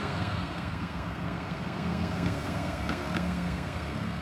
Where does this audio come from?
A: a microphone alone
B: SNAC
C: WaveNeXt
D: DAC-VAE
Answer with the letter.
B